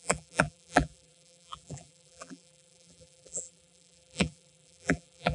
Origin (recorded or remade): remade